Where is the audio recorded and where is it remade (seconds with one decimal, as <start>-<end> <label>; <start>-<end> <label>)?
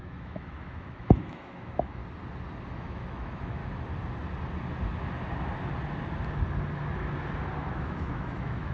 0.0-2.0 remade; 2.0-2.7 recorded; 2.7-3.6 remade; 3.6-7.7 recorded; 7.7-8.7 remade